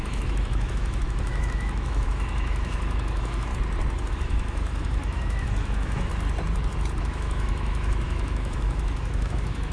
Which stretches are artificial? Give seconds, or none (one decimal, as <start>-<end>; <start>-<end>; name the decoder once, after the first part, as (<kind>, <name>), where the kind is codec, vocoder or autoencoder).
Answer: 0.0-3.5 (autoencoder, DAC-VAE); 4.1-6.1; 7.0-9.7